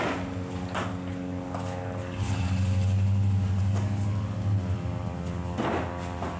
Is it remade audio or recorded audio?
recorded